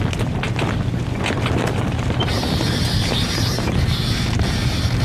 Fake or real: real